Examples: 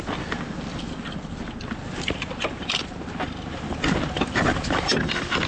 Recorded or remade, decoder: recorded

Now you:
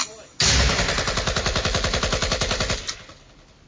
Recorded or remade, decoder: recorded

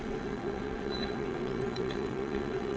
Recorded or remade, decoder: remade, vocoder, WaveNeXt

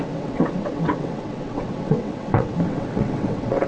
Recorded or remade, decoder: remade, vocoder, WaveNeXt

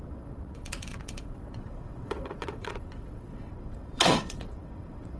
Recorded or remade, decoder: remade, vocoder, WaveNeXt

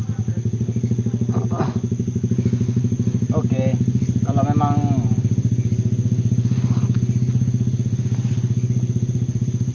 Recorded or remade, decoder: recorded